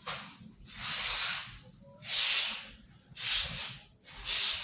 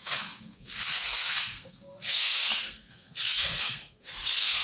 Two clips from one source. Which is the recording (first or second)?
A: first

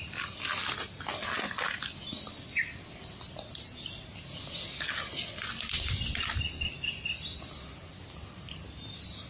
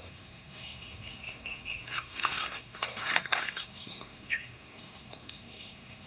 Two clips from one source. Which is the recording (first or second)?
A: first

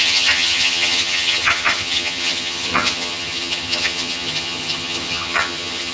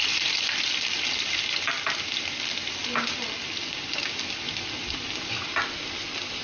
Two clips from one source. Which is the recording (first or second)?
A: second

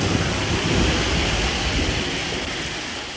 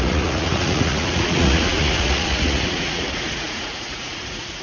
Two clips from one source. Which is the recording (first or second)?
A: first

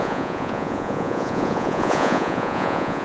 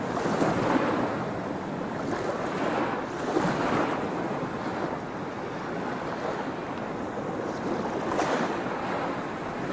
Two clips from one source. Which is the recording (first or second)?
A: second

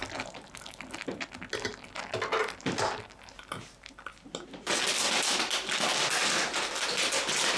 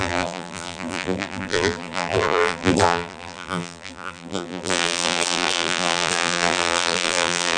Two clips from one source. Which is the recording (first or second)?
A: first